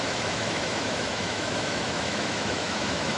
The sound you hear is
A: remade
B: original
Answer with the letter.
A